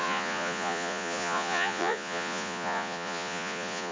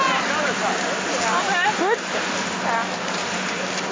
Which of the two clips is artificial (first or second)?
first